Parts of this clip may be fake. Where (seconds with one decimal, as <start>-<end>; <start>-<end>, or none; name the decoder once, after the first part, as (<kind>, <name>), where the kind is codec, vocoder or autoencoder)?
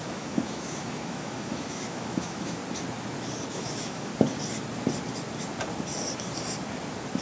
0.0-2.6 (autoencoder, DAC-VAE); 3.5-4.1